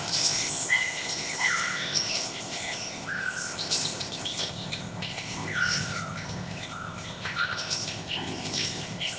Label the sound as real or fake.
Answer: fake